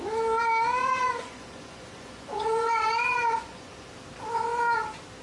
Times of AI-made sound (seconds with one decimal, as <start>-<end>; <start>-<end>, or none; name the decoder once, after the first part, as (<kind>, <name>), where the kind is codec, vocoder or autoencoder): 0.8-3.9 (vocoder, Vocos)